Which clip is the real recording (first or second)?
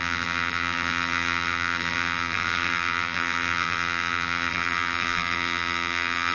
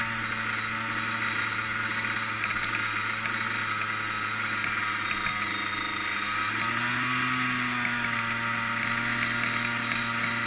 second